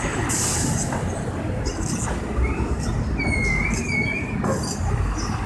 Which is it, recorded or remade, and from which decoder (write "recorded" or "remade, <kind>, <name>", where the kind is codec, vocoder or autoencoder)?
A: recorded